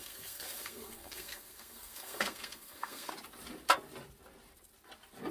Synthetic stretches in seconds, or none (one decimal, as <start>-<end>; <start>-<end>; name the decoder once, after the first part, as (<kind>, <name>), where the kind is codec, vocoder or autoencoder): 0.0-3.1 (codec, SNAC)